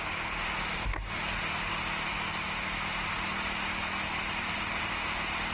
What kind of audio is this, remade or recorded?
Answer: recorded